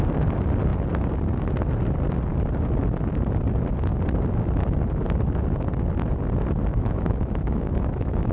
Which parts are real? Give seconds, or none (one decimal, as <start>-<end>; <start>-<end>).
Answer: 0.0-6.7